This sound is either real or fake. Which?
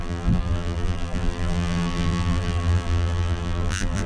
fake